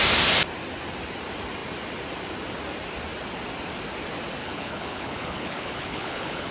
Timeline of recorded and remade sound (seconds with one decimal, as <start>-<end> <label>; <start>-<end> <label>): 0.0-4.4 recorded; 4.4-6.5 remade